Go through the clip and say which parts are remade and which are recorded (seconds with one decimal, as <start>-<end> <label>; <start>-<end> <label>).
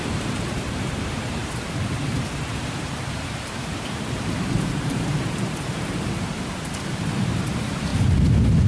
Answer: 0.0-7.9 remade; 7.9-8.7 recorded